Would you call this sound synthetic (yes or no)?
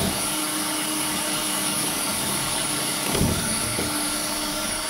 yes